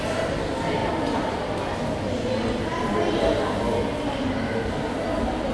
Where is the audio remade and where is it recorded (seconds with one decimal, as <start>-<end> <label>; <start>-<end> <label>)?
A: 0.0-5.5 recorded